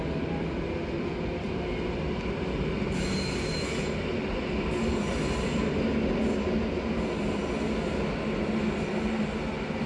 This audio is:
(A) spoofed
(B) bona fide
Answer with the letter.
B